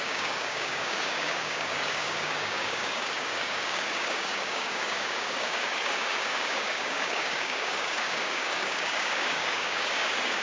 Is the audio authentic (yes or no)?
no